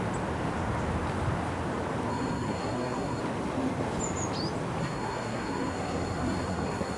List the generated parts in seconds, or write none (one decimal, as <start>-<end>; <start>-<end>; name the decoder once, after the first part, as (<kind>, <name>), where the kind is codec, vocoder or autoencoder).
2.1-3.2 (codec, SNAC); 4.8-7.0